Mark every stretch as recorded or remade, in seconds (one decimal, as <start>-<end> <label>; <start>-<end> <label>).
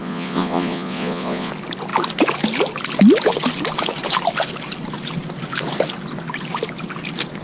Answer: 0.0-1.5 remade; 1.5-7.4 recorded